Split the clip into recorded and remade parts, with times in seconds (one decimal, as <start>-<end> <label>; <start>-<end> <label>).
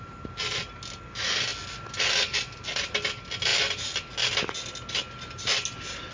0.0-6.1 recorded